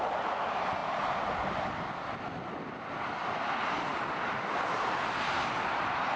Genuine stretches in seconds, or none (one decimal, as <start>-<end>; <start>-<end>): 0.0-6.2